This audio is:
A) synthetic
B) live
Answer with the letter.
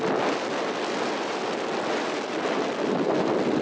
B